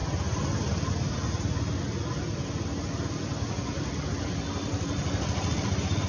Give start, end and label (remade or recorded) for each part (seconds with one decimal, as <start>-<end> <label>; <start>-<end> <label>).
0.0-6.1 recorded